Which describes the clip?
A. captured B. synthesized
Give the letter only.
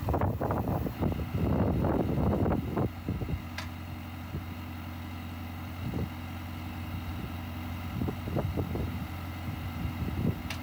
A